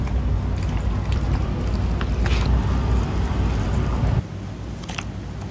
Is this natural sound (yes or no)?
yes